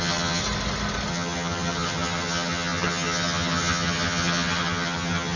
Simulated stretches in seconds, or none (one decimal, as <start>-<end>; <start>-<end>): 0.0-0.4; 1.1-5.4